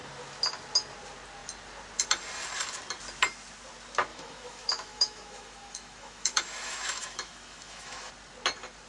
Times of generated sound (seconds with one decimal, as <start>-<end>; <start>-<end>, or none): 4.1-8.1